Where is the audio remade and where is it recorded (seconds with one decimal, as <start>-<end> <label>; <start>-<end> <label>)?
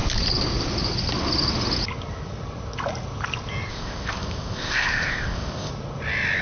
0.0-3.7 recorded; 3.7-5.7 remade; 5.7-6.4 recorded